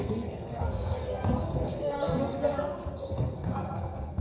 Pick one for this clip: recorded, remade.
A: remade